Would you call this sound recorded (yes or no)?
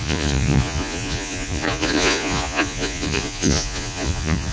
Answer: no